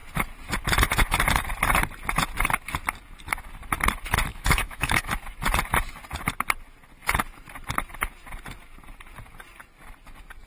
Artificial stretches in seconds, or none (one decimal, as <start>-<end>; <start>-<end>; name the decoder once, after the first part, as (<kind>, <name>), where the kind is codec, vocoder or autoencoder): 4.3-5.1 (autoencoder, DAC-VAE)